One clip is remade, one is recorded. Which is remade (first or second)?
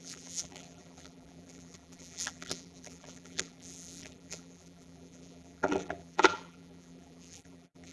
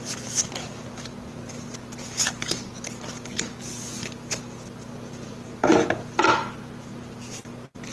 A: first